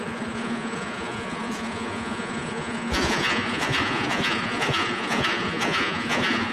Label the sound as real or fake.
fake